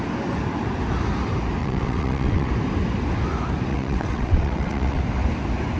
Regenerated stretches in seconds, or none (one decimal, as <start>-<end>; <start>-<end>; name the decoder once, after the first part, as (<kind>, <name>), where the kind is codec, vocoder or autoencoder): 1.6-2.5 (vocoder, WaveNeXt); 3.7-5.0